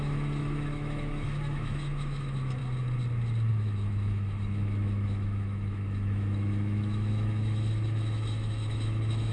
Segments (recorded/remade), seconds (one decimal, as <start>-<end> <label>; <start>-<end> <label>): 0.0-2.6 remade; 2.6-3.5 recorded; 3.5-9.3 remade